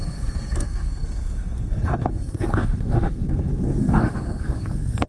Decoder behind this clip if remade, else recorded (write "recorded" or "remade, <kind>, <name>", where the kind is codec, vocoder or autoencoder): remade, codec, SNAC